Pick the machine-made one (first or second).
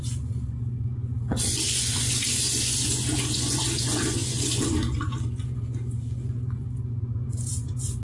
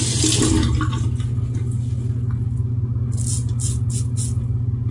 first